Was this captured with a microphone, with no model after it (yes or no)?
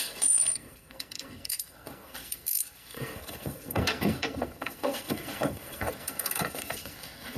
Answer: no